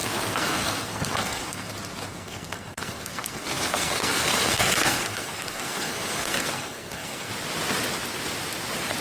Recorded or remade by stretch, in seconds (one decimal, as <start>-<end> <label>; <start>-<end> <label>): 0.0-1.7 remade; 1.7-2.1 recorded; 2.1-7.3 remade; 7.3-9.0 recorded